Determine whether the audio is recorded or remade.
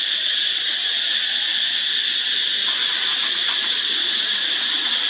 recorded